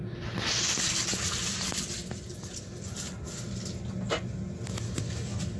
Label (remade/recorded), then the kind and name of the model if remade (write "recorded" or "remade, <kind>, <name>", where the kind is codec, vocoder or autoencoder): recorded